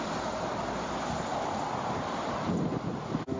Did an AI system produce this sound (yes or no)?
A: no